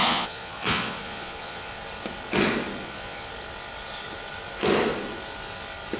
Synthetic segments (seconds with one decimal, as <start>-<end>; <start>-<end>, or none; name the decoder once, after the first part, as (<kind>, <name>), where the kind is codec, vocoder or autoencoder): 0.0-1.8 (vocoder, Vocos); 2.8-3.3